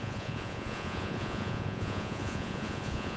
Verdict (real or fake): fake